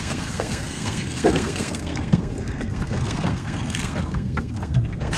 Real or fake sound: fake